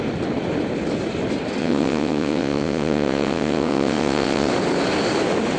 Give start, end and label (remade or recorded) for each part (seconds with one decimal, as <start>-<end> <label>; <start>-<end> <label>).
0.0-1.6 recorded; 1.6-4.5 remade; 4.5-5.6 recorded